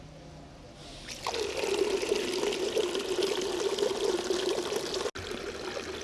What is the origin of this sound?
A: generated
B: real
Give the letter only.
B